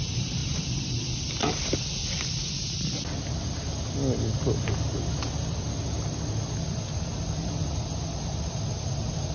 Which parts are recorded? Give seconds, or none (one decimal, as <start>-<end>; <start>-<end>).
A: 0.0-9.3